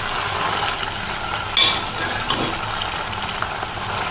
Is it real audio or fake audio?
real